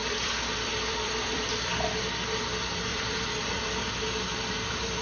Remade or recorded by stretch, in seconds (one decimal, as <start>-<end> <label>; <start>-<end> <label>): 0.0-1.5 remade; 1.5-2.9 recorded; 2.9-4.0 remade; 4.0-5.0 recorded